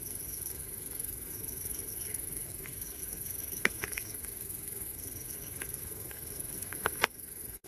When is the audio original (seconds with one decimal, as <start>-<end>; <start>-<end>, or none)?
none